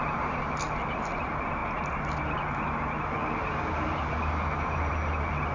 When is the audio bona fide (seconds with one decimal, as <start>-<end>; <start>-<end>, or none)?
0.0-5.5